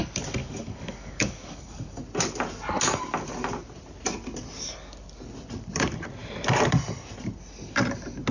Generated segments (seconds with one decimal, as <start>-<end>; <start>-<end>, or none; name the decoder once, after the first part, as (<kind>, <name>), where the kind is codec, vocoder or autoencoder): 0.4-2.0 (codec, DAC)